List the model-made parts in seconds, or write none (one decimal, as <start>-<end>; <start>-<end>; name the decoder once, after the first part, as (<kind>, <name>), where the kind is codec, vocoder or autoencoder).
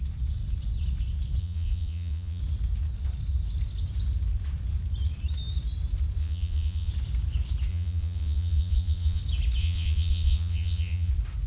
1.4-2.4 (vocoder, Vocos); 6.2-6.9; 7.7-9.2; 9.6-11.1